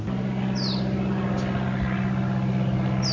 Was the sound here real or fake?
real